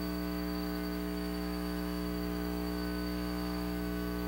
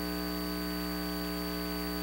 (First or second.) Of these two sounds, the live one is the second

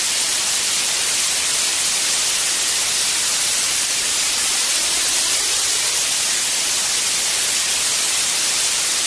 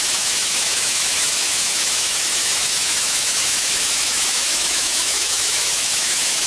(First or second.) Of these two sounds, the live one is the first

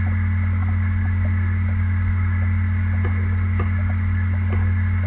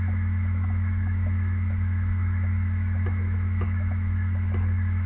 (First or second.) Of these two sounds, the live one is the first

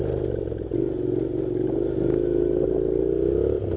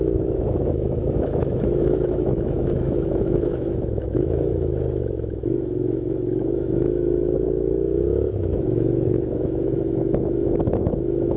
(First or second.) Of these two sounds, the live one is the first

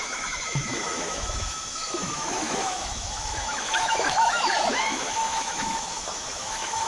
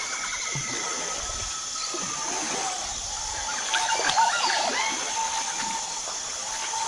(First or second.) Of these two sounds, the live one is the second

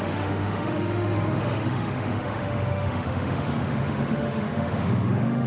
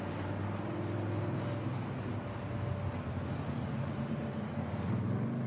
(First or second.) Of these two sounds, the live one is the second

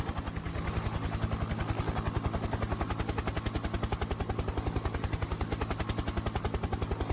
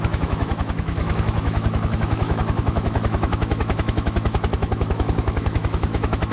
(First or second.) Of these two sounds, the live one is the first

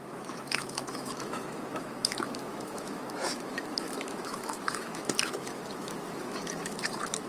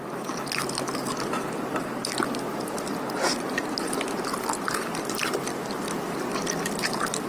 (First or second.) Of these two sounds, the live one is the second